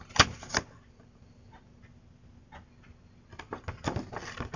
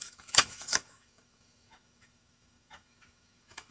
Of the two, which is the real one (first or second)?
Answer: first